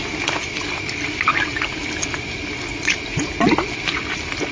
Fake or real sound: fake